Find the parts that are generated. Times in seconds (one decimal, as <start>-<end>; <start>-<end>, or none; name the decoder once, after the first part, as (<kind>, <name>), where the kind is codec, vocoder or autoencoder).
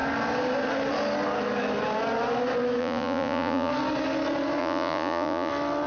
2.8-3.7 (vocoder, Vocos); 4.6-5.5